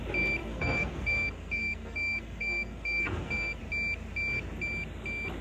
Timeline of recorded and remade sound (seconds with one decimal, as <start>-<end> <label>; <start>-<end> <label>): 0.0-0.4 recorded; 0.4-3.6 remade; 3.6-5.4 recorded